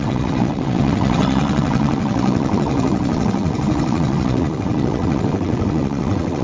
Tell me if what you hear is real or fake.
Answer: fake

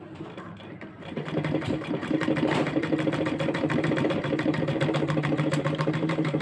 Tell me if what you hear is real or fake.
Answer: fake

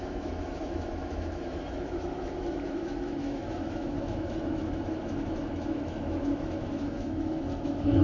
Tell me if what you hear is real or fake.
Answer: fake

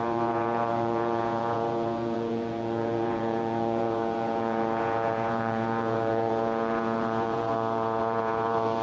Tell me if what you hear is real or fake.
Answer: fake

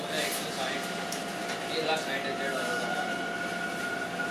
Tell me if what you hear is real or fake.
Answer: real